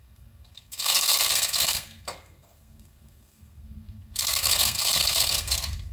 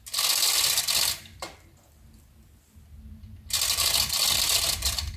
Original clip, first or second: second